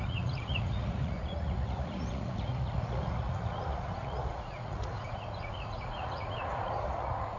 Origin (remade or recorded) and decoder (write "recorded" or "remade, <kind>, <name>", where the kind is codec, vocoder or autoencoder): remade, vocoder, Vocos